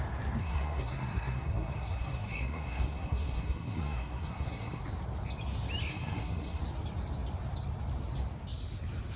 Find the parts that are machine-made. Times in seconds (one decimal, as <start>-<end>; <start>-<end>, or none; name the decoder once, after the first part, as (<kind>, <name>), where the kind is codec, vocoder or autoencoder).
0.4-4.8 (codec, SNAC); 5.9-6.6